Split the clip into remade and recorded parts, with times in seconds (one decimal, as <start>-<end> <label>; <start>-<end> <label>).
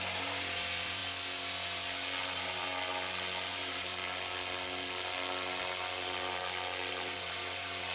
0.0-1.0 remade; 1.0-2.2 recorded; 2.2-2.7 remade; 2.7-3.5 recorded; 3.5-3.9 remade; 3.9-6.9 recorded; 6.9-7.9 remade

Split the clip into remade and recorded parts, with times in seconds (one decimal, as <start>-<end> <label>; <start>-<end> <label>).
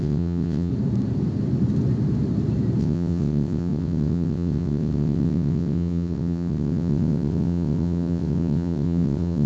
0.0-0.7 remade; 0.7-2.8 recorded; 2.8-9.5 remade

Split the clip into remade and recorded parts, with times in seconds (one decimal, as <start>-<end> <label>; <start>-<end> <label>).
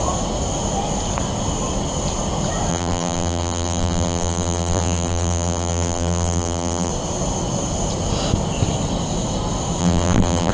0.0-2.7 recorded; 2.7-6.9 remade; 6.9-9.8 recorded; 9.8-10.5 remade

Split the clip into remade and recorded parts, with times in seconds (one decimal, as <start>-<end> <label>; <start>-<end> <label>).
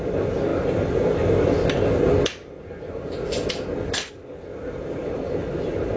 0.0-6.0 recorded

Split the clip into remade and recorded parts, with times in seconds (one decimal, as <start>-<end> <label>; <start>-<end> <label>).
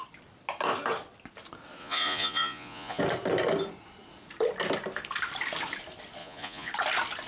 0.0-1.8 recorded; 1.8-3.0 remade; 3.0-6.2 recorded; 6.2-6.7 remade; 6.7-7.3 recorded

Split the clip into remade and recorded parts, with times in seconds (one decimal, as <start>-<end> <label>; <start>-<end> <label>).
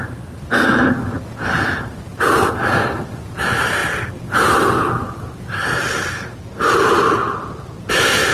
0.0-3.8 remade; 3.8-7.9 recorded; 7.9-8.3 remade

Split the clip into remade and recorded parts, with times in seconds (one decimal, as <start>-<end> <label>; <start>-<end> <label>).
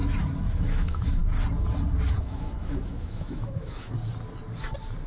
0.0-0.5 recorded; 0.5-1.2 remade; 1.2-2.2 recorded; 2.2-3.9 remade; 3.9-5.1 recorded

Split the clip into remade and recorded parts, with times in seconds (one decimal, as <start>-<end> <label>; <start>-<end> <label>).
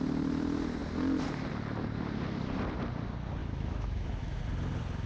0.0-3.4 recorded; 3.4-4.4 remade; 4.4-5.1 recorded